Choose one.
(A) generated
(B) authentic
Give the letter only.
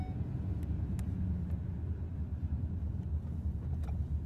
B